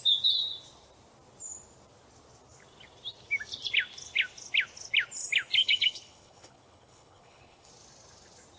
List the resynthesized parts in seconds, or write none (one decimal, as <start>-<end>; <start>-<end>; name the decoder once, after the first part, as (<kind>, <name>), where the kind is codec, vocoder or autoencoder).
5.6-7.7 (codec, HILCodec)